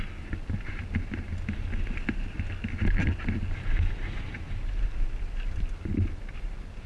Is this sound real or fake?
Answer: real